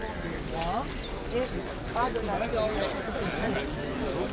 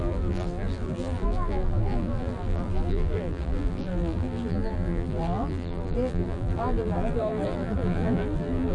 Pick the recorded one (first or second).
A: first